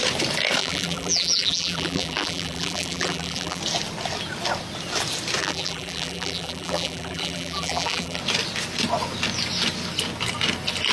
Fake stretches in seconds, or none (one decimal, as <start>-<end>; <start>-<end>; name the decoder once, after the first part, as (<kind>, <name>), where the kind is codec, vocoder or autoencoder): 0.6-3.6 (vocoder, BigVGAN v2); 5.4-8.2